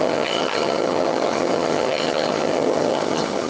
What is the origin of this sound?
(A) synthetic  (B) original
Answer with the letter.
A